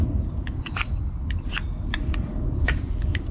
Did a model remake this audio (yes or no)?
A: yes